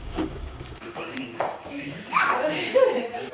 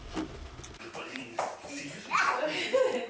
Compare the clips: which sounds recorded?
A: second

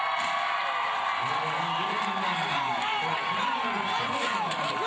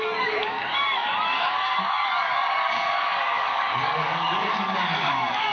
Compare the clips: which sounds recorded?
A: first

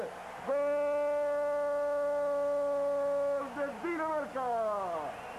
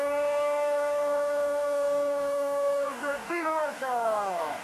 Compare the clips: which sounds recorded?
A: first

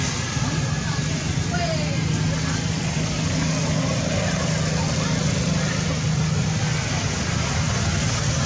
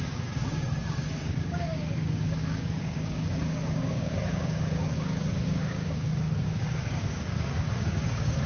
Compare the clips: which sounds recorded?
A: first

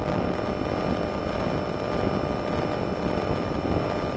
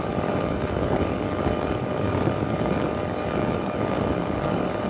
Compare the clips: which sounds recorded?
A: first